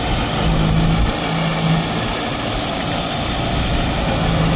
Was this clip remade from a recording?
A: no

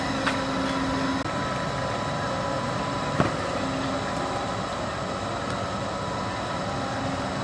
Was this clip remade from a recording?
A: no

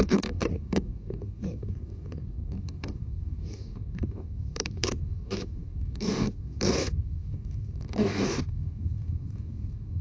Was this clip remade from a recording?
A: yes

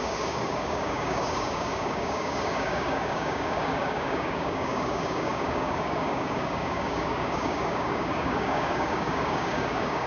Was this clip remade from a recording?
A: yes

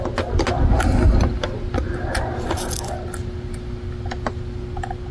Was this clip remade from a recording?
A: no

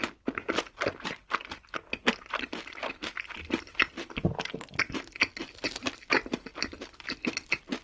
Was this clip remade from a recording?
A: no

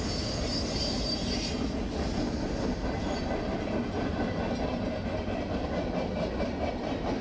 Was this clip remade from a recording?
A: no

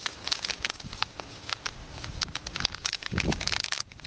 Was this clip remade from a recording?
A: yes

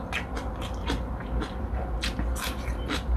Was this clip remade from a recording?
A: no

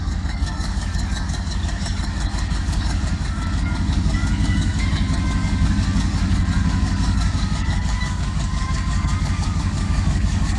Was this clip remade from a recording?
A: yes